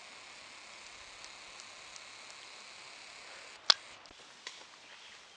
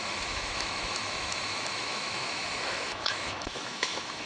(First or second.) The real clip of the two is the first